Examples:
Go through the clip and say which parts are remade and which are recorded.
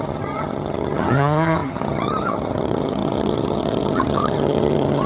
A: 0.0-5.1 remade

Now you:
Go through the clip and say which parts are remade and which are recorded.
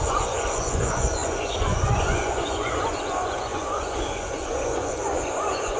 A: 0.0-5.8 remade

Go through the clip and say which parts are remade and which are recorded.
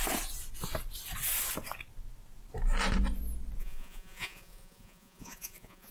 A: 0.0-3.6 recorded; 3.6-5.9 remade